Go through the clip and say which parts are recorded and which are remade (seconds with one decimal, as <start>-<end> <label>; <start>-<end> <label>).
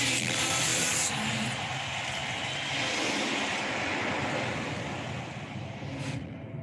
0.0-6.6 recorded